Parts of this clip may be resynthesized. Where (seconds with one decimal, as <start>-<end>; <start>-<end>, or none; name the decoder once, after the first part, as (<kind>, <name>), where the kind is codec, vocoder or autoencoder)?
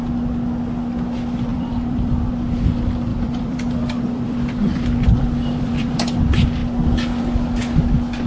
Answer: 1.5-2.3 (vocoder, BigVGAN v2); 3.1-6.0